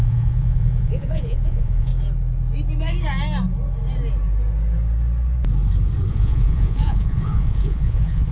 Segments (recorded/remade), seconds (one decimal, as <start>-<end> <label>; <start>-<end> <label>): 0.0-1.9 remade; 1.9-6.1 recorded; 6.1-8.3 remade